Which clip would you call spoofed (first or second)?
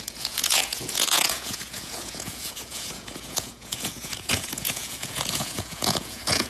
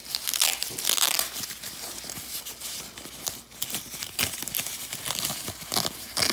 first